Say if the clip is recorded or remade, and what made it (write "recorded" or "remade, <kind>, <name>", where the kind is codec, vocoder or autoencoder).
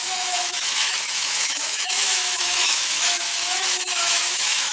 remade, autoencoder, DAC-VAE